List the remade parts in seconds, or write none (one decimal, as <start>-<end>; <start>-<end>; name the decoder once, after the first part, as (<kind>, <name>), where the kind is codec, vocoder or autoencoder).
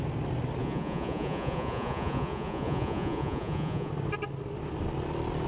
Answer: 0.6-3.9 (vocoder, Vocos)